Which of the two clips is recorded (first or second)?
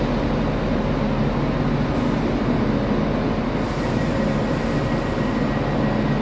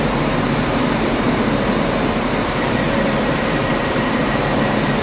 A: first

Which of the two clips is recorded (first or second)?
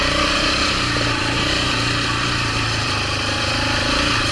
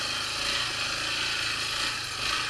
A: second